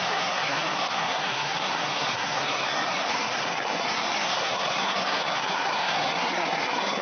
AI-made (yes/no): yes